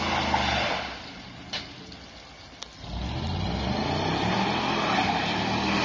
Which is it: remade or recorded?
recorded